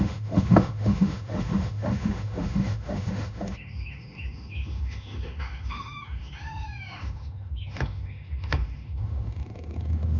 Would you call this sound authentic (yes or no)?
no